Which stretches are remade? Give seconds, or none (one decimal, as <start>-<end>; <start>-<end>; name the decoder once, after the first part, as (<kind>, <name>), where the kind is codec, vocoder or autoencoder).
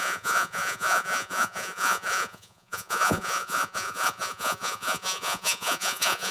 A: 0.0-6.3 (vocoder, Vocos)